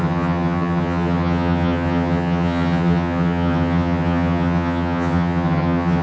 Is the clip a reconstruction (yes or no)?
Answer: yes